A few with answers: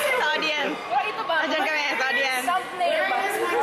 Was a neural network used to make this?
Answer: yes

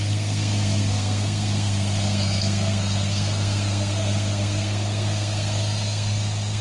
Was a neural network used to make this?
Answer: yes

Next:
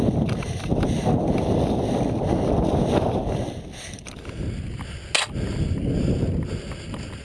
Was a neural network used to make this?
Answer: no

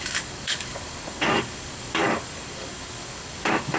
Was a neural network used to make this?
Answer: yes